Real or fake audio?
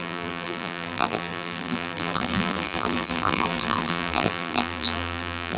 fake